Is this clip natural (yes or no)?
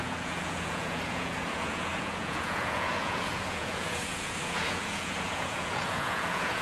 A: no